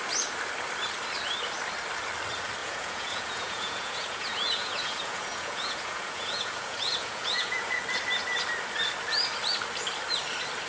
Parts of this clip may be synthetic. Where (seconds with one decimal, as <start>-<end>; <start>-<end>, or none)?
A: 2.6-7.8